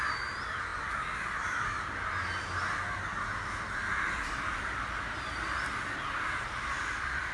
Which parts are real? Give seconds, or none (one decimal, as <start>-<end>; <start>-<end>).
0.0-7.3